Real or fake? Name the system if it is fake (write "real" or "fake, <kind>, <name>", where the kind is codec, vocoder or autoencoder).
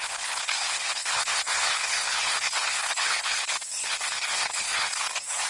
fake, codec, HILCodec